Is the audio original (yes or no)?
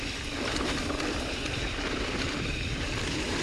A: no